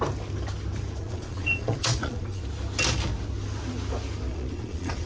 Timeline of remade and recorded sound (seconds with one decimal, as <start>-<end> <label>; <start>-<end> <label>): 0.0-1.0 recorded; 1.0-2.4 remade; 2.4-4.3 recorded; 4.3-5.1 remade

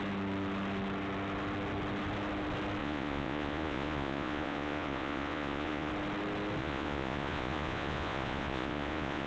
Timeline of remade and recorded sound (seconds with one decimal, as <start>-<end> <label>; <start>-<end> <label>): 0.0-2.8 recorded; 2.8-5.9 remade; 5.9-6.6 recorded; 6.6-9.3 remade

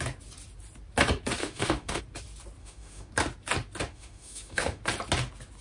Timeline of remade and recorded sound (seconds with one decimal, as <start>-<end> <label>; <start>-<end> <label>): 0.0-1.4 recorded; 1.4-2.0 remade; 2.0-2.6 recorded; 2.6-3.1 remade; 3.1-3.9 recorded; 3.9-4.8 remade; 4.8-5.6 recorded

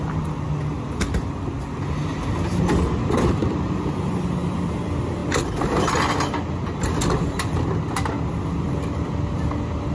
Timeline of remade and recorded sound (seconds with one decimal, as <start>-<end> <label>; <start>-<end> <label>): 0.0-9.9 recorded

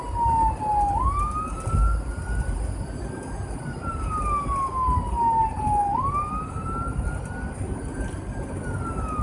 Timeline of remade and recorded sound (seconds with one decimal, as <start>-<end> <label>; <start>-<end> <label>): 0.0-9.2 recorded